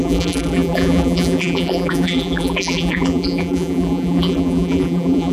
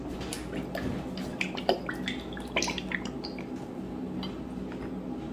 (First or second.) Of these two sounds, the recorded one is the second